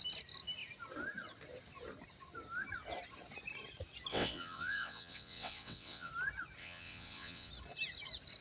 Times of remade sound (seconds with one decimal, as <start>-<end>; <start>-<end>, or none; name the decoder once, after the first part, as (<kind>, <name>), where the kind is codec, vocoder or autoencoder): 4.1-6.1 (vocoder, WaveNeXt); 6.6-7.5